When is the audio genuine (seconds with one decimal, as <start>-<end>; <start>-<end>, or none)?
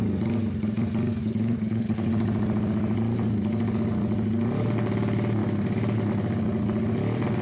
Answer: 0.0-1.2; 2.1-7.4